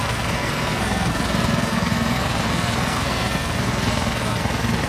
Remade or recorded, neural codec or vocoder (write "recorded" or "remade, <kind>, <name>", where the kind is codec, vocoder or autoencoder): remade, codec, SNAC